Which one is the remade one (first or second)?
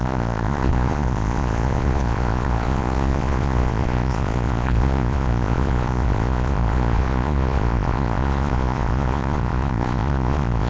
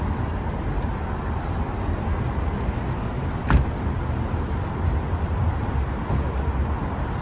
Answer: first